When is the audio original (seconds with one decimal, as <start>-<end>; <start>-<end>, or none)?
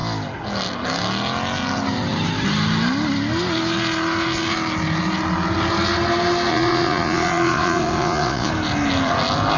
0.0-6.5; 8.5-9.6